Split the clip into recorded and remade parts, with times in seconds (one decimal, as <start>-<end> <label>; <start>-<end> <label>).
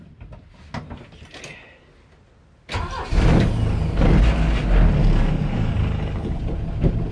0.0-5.0 recorded; 5.0-6.4 remade; 6.4-7.1 recorded